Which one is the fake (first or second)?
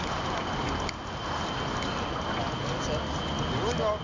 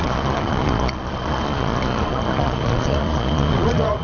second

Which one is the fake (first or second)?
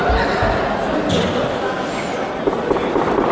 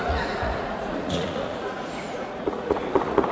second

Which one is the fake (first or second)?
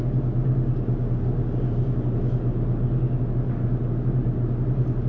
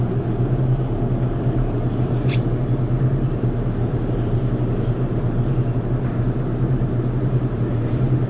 second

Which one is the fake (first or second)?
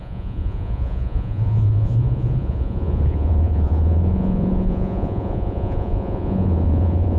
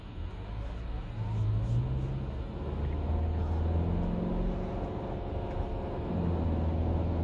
first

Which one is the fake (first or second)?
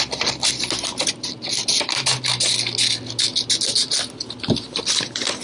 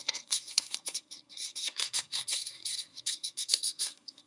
second